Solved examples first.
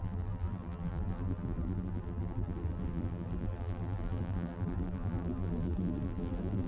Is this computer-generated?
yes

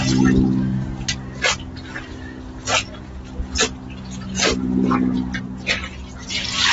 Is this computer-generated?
no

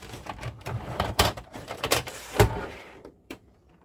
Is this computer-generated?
yes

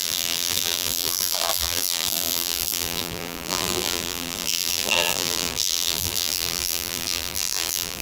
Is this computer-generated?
yes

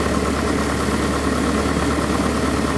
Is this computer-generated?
no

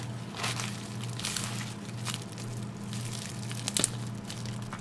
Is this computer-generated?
no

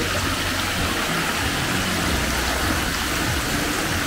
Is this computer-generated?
no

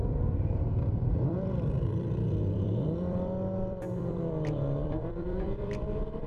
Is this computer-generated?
yes